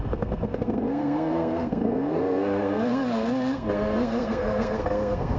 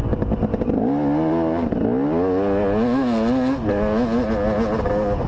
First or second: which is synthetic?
first